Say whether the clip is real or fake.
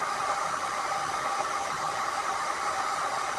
real